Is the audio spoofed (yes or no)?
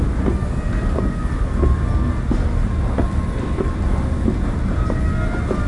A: no